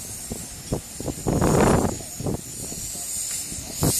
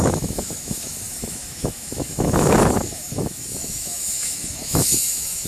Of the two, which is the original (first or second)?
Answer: first